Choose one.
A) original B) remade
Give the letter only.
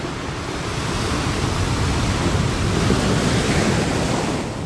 A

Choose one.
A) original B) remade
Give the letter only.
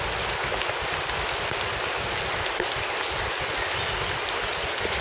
A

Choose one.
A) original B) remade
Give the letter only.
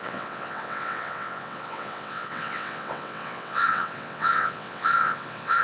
B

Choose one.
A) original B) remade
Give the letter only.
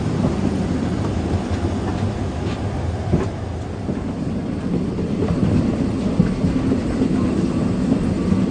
A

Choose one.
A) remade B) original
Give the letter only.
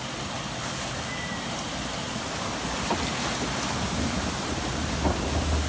B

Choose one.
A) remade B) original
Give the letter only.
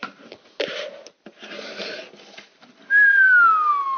B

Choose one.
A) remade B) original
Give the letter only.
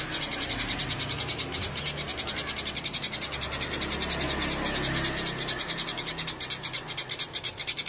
B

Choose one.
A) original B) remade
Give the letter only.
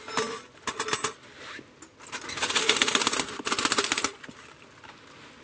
A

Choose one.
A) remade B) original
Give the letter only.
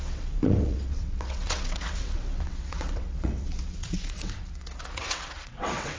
A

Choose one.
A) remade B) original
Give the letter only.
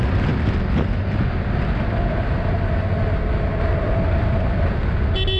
B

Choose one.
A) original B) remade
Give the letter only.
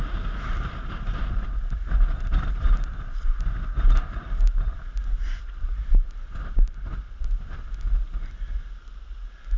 A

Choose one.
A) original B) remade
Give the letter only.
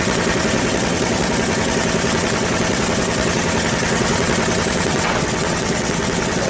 B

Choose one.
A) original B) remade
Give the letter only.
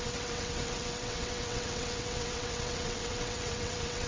B